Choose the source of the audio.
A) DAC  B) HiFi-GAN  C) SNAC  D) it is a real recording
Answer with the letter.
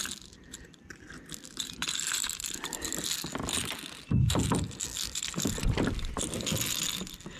D